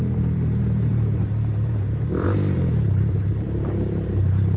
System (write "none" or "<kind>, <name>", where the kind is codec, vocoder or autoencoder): vocoder, BigVGAN v2